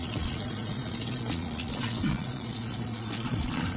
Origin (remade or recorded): remade